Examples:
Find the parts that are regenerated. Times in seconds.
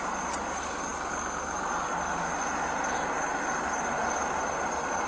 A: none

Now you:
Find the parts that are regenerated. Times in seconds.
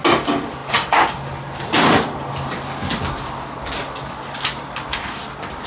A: none